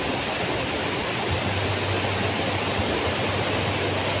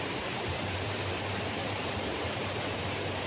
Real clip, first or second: first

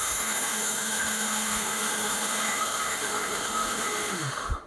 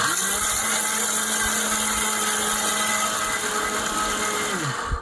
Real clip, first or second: second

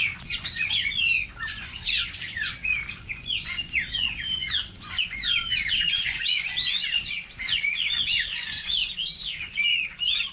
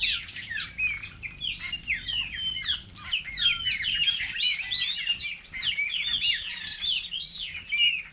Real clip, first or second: second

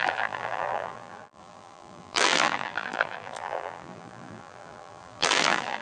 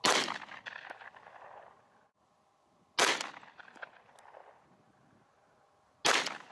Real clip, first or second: second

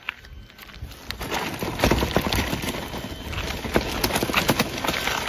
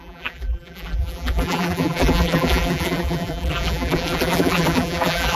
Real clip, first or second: first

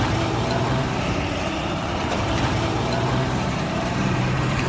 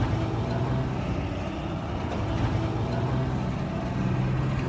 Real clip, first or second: second